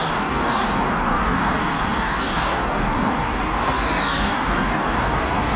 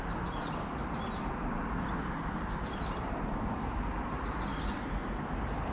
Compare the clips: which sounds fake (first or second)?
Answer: first